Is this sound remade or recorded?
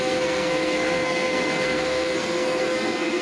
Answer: remade